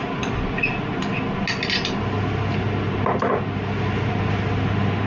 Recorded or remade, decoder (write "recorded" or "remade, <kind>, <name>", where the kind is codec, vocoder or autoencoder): recorded